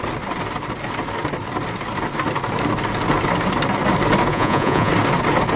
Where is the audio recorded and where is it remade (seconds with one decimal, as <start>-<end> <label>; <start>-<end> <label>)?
0.0-4.3 recorded; 4.3-4.9 remade; 4.9-5.6 recorded